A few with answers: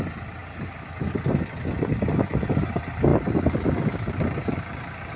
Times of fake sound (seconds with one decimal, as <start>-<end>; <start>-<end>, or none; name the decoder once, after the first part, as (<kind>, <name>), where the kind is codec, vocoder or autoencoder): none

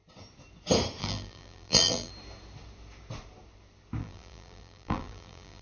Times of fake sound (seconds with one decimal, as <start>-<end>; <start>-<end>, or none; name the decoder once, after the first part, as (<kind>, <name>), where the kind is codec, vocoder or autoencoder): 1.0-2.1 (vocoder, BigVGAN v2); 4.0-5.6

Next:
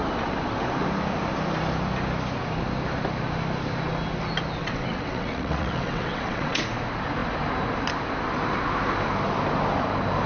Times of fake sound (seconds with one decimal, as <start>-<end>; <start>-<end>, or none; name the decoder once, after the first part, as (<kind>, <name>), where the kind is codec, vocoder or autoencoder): 4.6-6.6 (vocoder, WaveNeXt)

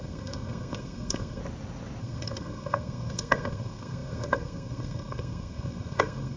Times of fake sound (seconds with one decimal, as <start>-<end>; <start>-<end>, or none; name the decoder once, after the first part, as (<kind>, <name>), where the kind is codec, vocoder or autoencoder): 0.0-1.4 (codec, SNAC); 2.0-6.4

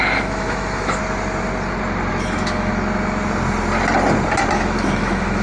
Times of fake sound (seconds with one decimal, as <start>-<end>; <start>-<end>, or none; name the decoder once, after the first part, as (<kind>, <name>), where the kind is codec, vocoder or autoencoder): 0.0-1.0 (autoencoder, DAC-VAE); 2.1-2.7; 4.5-5.4

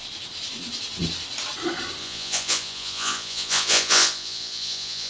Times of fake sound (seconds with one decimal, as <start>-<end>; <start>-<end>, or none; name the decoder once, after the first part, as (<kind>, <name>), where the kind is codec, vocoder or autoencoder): 2.0-5.1 (vocoder, Vocos)